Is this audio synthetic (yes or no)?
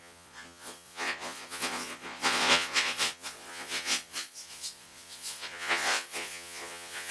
yes